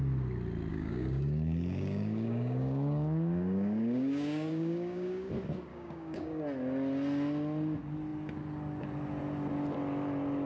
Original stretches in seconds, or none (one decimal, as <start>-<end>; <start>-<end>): 0.0-0.7; 5.3-5.7; 6.4-10.5